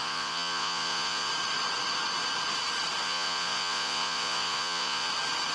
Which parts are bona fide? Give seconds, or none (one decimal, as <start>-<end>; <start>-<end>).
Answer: 1.3-3.0; 5.1-5.5